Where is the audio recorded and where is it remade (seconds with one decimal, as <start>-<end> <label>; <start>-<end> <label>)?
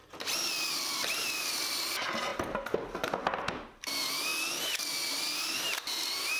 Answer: 0.0-0.7 recorded; 0.7-2.3 remade; 2.3-3.1 recorded; 3.1-4.3 remade; 4.3-5.1 recorded; 5.1-6.4 remade